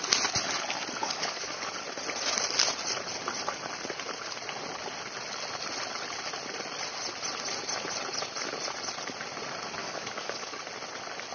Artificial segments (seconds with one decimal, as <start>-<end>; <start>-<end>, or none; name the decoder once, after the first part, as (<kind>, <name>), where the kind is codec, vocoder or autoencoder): 1.0-1.7 (codec, DAC); 9.8-10.6